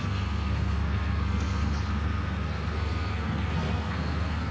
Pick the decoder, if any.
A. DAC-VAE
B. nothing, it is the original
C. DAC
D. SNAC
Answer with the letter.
D